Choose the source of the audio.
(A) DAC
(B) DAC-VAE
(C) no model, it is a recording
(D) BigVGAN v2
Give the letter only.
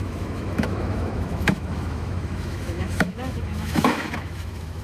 B